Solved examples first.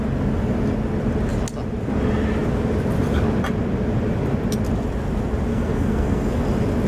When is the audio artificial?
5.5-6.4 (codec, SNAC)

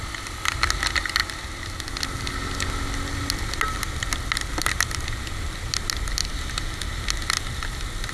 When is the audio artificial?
none

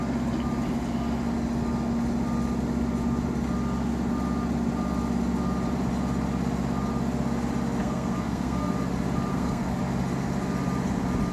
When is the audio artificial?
7.8-8.7 (codec, SNAC); 9.3-9.8

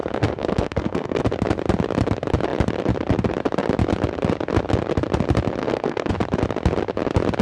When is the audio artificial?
0.0-1.2 (codec, SNAC); 5.6-6.1

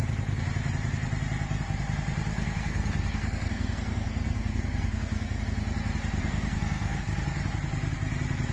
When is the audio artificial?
2.3-5.4 (codec, SNAC); 6.2-7.0

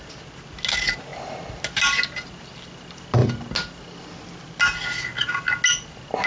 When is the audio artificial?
none